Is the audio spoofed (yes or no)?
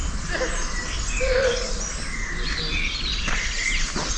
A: no